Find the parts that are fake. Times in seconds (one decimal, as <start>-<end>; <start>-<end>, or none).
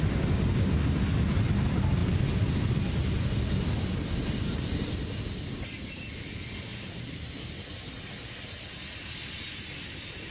none